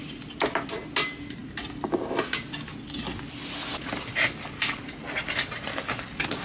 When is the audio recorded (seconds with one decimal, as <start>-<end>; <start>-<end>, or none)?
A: 0.0-6.4